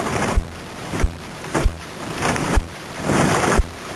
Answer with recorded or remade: remade